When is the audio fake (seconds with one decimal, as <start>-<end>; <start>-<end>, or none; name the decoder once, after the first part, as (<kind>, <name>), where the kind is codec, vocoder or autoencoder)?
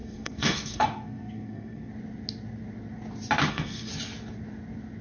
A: 0.0-1.9 (codec, SNAC); 3.5-3.9